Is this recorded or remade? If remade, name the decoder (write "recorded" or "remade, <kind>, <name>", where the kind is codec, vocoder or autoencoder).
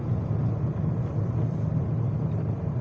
recorded